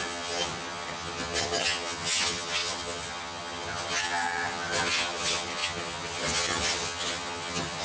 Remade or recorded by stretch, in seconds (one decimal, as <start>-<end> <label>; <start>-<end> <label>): 0.0-7.8 remade